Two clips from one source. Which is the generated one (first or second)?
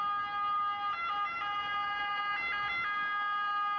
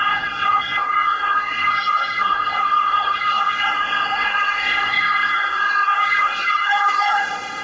second